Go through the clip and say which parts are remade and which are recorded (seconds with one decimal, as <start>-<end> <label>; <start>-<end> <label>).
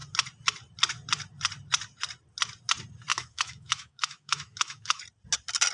0.0-3.1 recorded; 3.1-5.0 remade; 5.0-5.7 recorded